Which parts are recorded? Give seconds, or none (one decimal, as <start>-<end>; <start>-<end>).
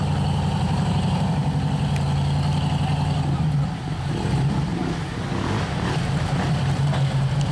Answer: 1.4-4.1; 4.7-5.6